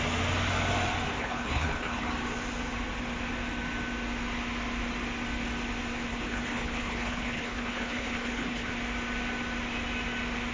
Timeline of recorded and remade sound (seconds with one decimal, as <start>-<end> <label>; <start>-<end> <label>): 0.0-1.2 recorded; 1.2-2.1 remade; 2.1-6.1 recorded; 6.1-8.7 remade; 8.7-10.5 recorded